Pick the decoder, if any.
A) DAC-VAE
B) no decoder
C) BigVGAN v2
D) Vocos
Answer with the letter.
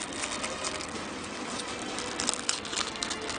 B